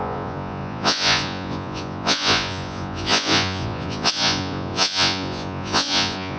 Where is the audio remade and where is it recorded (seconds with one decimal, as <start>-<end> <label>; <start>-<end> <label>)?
0.0-6.4 remade